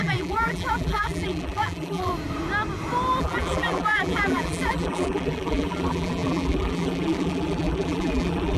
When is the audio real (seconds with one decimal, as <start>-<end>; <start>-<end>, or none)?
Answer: 2.1-3.2